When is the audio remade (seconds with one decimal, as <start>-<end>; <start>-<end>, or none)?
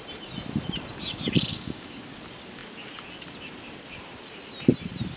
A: 1.5-2.0